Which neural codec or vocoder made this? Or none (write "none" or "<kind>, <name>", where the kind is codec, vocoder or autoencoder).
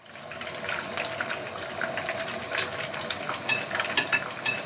none